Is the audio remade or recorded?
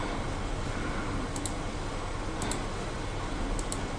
recorded